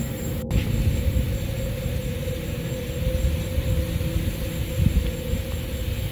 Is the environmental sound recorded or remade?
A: recorded